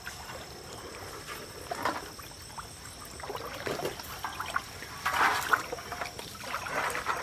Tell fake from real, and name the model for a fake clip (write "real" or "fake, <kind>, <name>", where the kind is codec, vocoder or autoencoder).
real